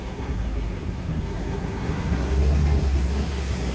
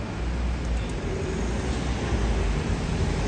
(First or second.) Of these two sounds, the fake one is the first